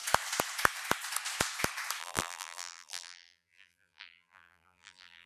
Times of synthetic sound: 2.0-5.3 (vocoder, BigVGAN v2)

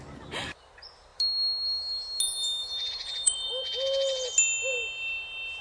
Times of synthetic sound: 2.6-3.5 (vocoder, BigVGAN v2)

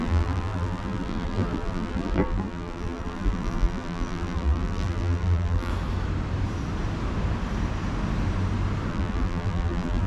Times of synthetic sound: 0.0-5.7 (vocoder, BigVGAN v2); 8.9-10.1

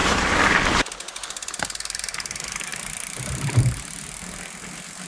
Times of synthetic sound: 0.0-0.9 (vocoder, BigVGAN v2); 2.7-3.6

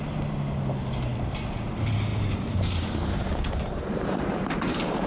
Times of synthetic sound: 2.1-5.1 (vocoder, BigVGAN v2)